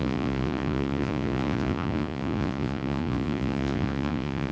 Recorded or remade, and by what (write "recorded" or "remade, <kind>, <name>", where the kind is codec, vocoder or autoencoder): remade, vocoder, Vocos